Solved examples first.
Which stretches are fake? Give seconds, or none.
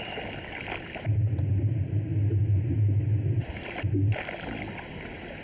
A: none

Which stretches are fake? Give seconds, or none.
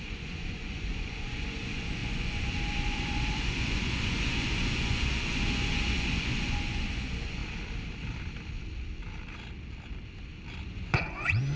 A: 0.0-7.4; 10.7-11.6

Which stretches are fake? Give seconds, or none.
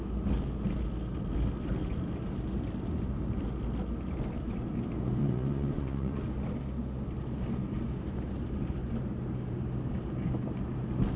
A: 5.2-6.2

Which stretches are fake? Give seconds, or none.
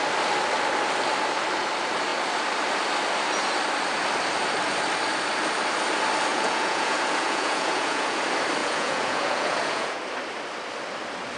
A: 6.3-8.2; 8.6-10.0